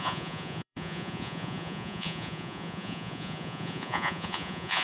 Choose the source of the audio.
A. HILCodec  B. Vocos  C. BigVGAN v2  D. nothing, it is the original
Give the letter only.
B